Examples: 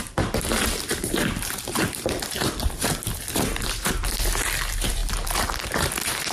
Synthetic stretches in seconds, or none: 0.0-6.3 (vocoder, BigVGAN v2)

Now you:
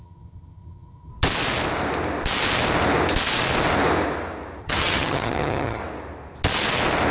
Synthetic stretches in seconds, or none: 0.0-1.1 (vocoder, HiFi-GAN); 4.6-5.8

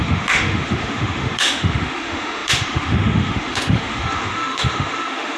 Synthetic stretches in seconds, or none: 0.0-5.4 (autoencoder, DAC-VAE)

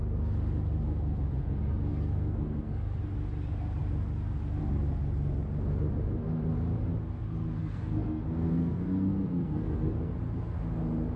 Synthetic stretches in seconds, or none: 1.9-3.0 (codec, SNAC); 7.6-10.1

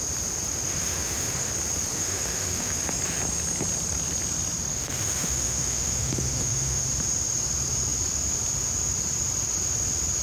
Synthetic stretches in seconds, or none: 0.8-1.5 (autoencoder, DAC-VAE); 1.9-2.8; 4.7-6.8

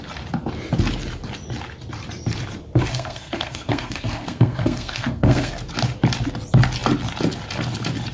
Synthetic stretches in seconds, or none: 2.9-5.5 (codec, SNAC)